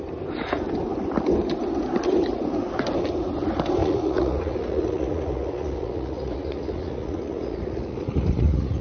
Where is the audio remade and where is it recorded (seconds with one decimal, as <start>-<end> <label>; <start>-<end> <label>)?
0.0-3.8 recorded; 3.8-8.8 remade